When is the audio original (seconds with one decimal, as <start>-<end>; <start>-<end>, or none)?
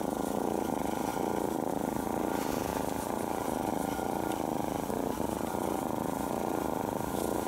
0.0-2.7; 3.7-7.5